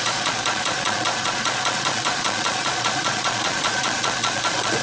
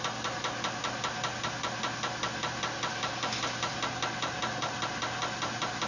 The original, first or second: second